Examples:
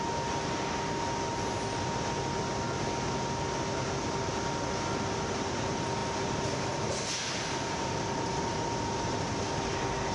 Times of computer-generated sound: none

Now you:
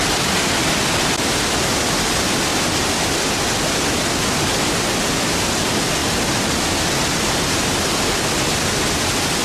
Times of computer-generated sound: none

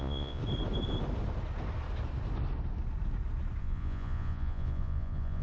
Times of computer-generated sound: 0.0-0.4 (vocoder, Vocos); 3.6-5.4

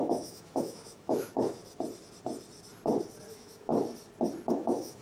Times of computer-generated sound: 0.0-1.6 (autoencoder, DAC-VAE); 3.3-3.7; 4.5-5.0

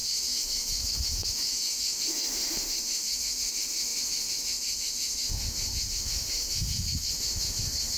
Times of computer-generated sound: 0.0-8.0 (autoencoder, DAC-VAE)

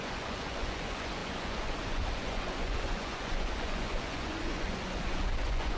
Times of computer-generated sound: 0.0-5.8 (vocoder, Vocos)

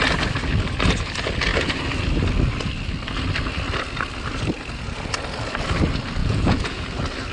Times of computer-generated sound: 6.2-6.8 (vocoder, Vocos)